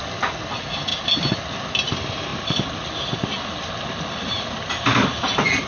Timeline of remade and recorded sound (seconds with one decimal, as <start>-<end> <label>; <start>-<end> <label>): 0.0-5.7 recorded